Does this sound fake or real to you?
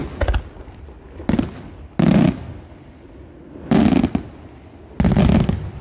real